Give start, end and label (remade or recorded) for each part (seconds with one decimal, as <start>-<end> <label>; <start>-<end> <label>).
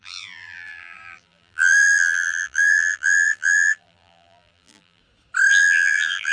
0.0-5.0 remade; 5.0-5.5 recorded; 5.5-6.3 remade